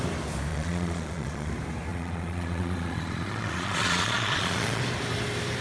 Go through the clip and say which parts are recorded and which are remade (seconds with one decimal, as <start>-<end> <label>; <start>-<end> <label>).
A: 0.0-0.5 recorded; 0.5-1.5 remade; 1.5-1.9 recorded; 1.9-4.8 remade; 4.8-5.6 recorded